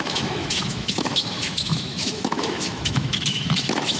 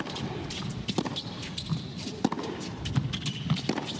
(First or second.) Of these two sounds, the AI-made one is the first